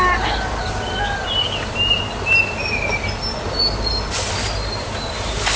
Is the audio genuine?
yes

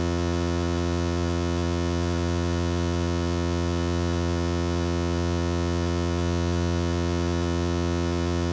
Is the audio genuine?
no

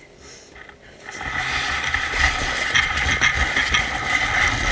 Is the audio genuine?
yes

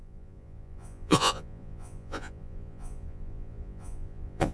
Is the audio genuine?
no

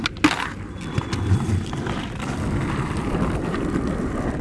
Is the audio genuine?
yes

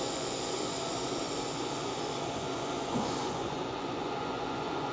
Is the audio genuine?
no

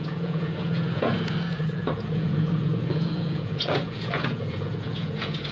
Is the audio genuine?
no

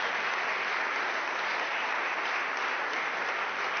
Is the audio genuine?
yes